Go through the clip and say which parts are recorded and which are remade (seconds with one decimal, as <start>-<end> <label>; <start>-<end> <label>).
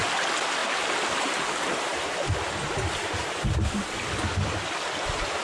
0.0-5.4 recorded